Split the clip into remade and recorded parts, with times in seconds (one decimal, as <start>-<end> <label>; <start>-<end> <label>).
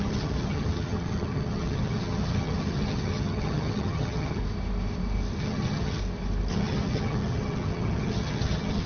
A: 0.0-4.4 remade; 4.4-5.4 recorded; 5.4-6.0 remade; 6.0-6.5 recorded; 6.5-8.9 remade